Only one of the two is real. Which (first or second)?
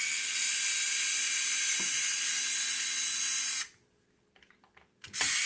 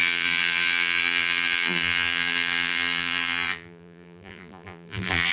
first